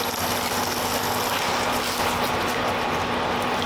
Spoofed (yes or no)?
no